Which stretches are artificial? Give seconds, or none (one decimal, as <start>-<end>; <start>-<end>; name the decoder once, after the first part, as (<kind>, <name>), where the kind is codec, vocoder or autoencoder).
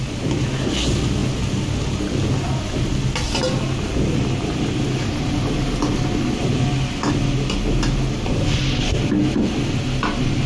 none